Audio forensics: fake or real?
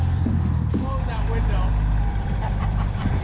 fake